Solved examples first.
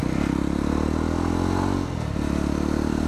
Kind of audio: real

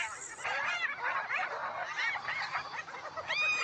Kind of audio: real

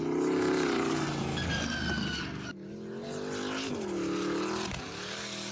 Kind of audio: real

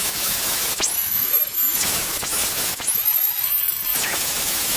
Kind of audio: fake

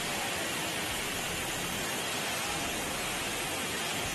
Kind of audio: real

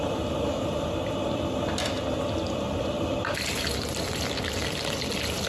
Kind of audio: real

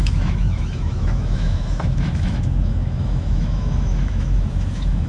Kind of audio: fake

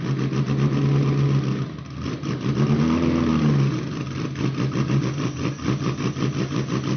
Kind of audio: real